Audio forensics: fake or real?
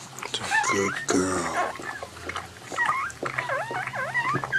real